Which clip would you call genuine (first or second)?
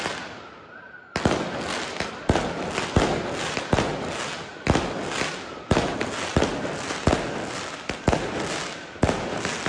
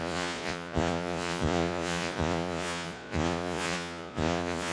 first